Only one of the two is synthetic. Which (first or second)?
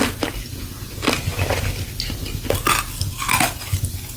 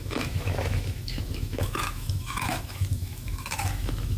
second